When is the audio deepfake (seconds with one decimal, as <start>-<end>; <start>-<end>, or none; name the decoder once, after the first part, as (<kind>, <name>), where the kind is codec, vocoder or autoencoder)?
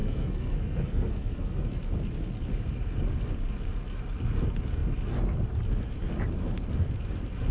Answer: 0.0-1.7 (codec, SNAC)